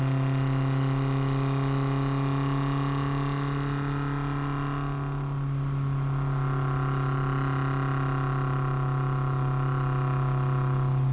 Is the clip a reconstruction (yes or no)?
no